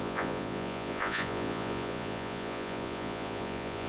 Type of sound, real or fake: fake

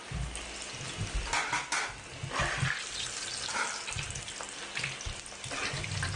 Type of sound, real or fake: real